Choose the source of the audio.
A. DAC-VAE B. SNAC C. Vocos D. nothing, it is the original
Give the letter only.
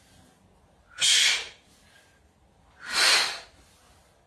D